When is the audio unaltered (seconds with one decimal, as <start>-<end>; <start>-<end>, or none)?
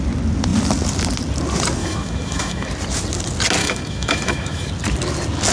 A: 0.0-1.8; 2.7-3.6; 4.7-5.5